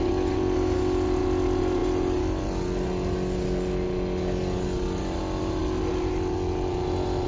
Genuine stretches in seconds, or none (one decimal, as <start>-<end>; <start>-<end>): 0.0-7.3